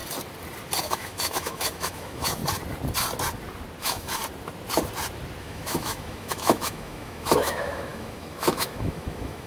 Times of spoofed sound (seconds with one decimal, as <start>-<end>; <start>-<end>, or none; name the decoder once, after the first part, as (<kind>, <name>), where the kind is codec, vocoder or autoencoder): 0.8-2.4 (autoencoder, DAC-VAE); 3.8-4.2; 5.4-9.5